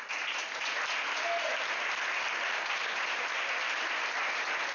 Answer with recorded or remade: recorded